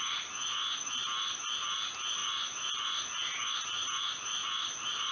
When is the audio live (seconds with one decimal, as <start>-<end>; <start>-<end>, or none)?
0.0-5.1

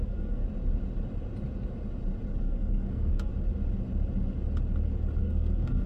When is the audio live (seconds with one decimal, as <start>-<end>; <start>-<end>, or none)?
0.4-2.4; 3.3-5.2

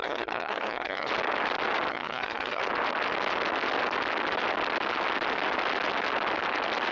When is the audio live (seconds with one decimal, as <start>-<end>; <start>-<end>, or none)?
1.1-1.9; 2.6-6.9

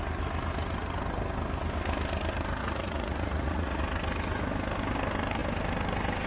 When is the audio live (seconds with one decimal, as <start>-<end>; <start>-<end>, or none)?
0.0-2.6; 3.8-6.3

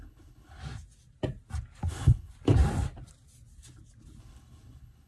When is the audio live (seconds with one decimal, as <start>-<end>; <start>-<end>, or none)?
0.6-1.9; 2.3-4.2

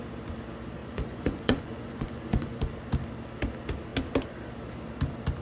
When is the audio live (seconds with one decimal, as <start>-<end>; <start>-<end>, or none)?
0.0-0.8; 2.7-5.4

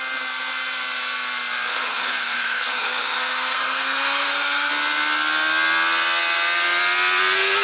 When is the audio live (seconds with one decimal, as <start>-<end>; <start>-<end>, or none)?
0.0-1.7; 4.7-7.6

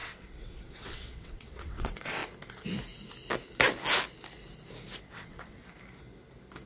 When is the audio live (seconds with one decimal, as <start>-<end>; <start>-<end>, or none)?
2.2-5.0; 5.6-6.7